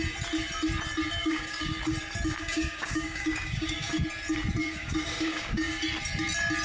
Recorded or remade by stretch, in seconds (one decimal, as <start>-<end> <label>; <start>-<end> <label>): 0.0-1.2 recorded; 1.2-1.8 remade; 1.8-2.4 recorded; 2.4-3.9 remade; 3.9-4.6 recorded; 4.6-5.8 remade; 5.8-6.6 recorded